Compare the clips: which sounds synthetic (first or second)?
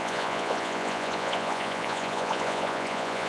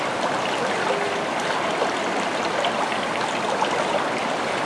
first